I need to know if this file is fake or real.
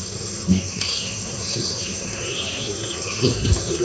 fake